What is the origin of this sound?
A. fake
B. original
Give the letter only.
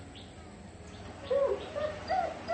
B